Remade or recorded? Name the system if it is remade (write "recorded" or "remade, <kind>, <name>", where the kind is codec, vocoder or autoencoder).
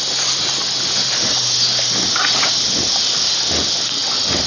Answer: recorded